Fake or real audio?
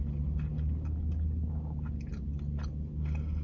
real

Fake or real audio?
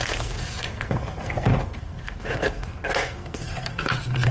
fake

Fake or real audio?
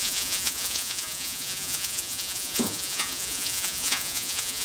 fake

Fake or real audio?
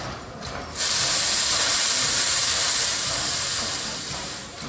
fake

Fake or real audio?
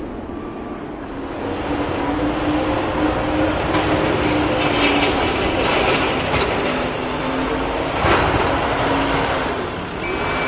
real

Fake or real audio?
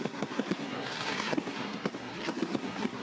fake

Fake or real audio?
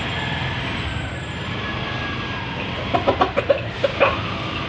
real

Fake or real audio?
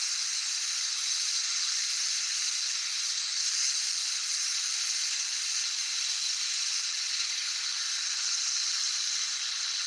real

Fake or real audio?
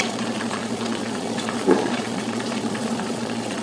fake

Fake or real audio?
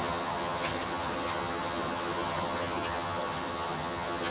fake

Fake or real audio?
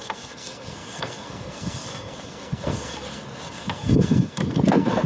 fake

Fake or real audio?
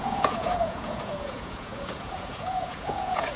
fake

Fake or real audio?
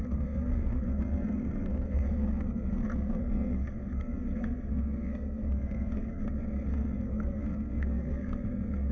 fake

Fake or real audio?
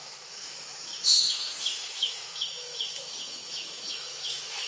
fake